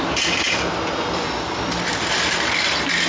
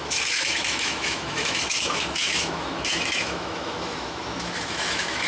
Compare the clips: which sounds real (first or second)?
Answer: first